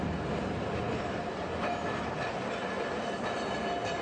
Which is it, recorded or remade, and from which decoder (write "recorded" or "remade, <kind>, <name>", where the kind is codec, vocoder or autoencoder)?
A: recorded